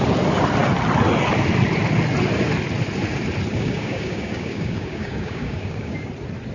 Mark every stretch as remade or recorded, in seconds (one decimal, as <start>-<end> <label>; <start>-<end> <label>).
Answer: 0.0-3.5 recorded; 3.5-6.1 remade; 6.1-6.5 recorded